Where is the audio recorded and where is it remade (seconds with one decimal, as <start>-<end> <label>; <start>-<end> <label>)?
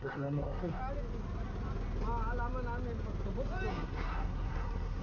0.0-0.8 remade; 0.8-3.7 recorded; 3.7-5.0 remade